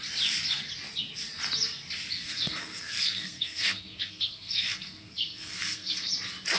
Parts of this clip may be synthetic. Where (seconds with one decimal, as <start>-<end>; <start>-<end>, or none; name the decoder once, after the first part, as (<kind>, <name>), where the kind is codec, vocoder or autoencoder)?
2.1-6.1 (codec, SNAC)